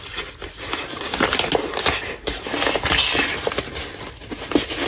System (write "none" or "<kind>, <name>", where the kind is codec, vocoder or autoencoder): none